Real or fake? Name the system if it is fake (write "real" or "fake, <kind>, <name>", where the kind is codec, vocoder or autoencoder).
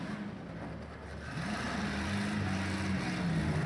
real